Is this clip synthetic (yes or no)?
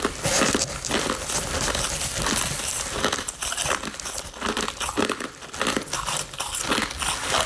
no